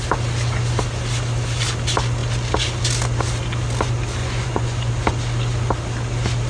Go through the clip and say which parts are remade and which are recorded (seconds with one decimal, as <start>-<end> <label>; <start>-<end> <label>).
0.0-4.2 recorded; 4.2-4.9 remade; 4.9-6.5 recorded